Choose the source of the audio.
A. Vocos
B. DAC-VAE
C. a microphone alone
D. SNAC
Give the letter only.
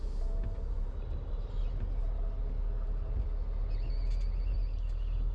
C